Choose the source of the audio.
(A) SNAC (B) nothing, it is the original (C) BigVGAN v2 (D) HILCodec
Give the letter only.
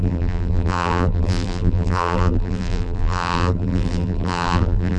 C